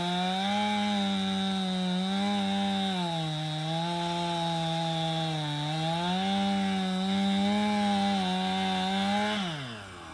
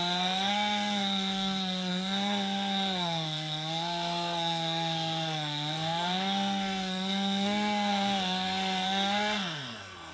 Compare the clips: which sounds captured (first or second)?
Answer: first